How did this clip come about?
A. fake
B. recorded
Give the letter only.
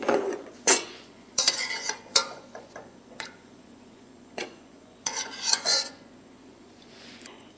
A